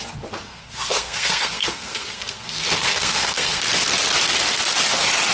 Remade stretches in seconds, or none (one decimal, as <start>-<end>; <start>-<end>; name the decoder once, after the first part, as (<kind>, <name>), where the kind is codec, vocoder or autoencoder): 0.5-3.6 (codec, SNAC)